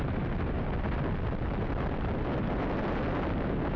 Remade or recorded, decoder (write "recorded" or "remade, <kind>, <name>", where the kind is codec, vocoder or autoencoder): recorded